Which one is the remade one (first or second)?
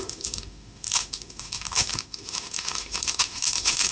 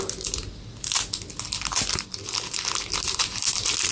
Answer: first